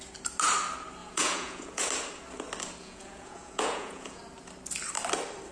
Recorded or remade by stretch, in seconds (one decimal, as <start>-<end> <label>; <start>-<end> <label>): 0.0-1.0 recorded; 1.0-1.9 remade; 1.9-2.8 recorded; 2.8-4.2 remade; 4.2-5.5 recorded